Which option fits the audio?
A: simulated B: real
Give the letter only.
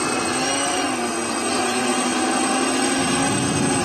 B